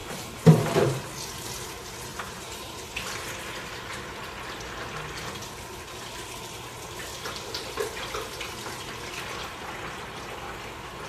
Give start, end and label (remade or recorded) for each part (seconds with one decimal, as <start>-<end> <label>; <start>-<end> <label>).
0.0-0.9 remade; 0.9-2.1 recorded; 2.1-2.9 remade; 2.9-11.1 recorded